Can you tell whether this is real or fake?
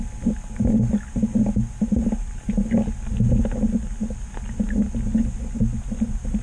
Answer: real